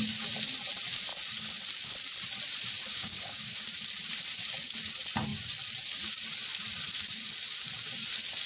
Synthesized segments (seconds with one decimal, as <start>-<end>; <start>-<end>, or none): 2.9-3.6